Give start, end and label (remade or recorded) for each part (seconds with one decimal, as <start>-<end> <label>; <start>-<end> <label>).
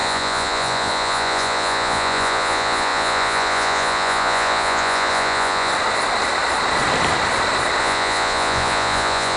0.0-5.7 remade; 5.7-7.8 recorded; 7.8-9.4 remade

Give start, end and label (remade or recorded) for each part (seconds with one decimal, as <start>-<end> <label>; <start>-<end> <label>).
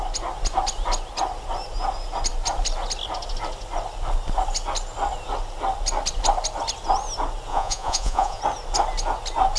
0.0-7.5 recorded; 7.5-8.4 remade; 8.4-9.6 recorded